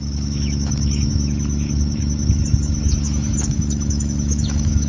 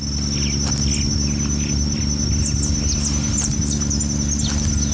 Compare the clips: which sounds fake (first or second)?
first